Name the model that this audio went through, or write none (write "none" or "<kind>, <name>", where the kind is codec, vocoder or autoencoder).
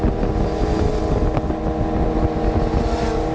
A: none